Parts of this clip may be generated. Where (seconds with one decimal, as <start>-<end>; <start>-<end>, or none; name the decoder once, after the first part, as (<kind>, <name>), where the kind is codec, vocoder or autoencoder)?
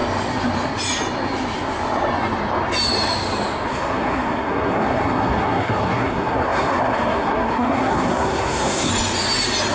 3.7-8.9 (codec, SNAC)